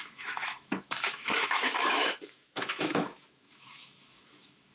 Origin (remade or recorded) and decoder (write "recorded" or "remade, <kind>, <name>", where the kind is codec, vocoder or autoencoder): remade, autoencoder, DAC-VAE